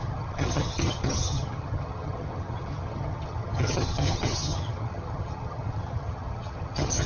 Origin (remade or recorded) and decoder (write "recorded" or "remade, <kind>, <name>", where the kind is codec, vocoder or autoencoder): remade, vocoder, HiFi-GAN